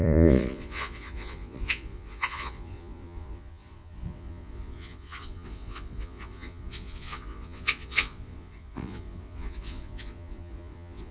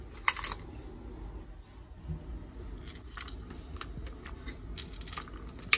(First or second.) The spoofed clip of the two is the first